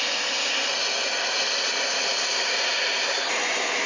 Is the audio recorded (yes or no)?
yes